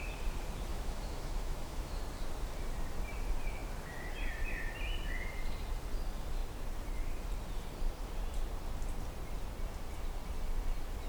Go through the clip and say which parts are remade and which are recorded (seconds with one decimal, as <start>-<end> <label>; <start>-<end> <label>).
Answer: 0.0-0.7 recorded; 0.7-2.0 remade; 2.0-11.1 recorded